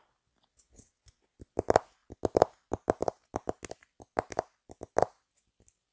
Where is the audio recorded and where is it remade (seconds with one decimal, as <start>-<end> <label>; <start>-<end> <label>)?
0.0-5.9 recorded